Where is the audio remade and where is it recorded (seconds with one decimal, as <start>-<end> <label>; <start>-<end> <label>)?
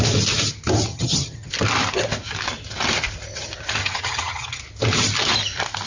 0.0-0.9 recorded; 0.9-1.5 remade; 1.5-3.8 recorded; 3.8-4.6 remade; 4.6-5.9 recorded